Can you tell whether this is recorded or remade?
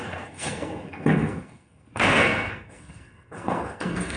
remade